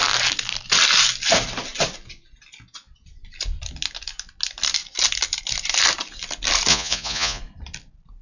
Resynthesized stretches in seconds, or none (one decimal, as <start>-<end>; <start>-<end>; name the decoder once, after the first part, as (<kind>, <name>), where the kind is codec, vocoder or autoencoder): 6.7-7.4 (vocoder, Vocos)